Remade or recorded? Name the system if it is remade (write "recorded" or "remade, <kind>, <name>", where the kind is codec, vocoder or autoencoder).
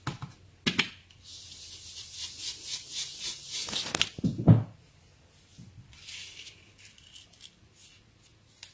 recorded